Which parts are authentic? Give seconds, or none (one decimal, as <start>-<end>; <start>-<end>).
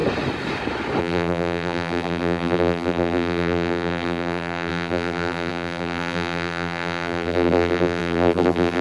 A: 0.0-1.0